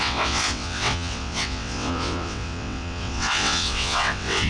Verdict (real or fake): fake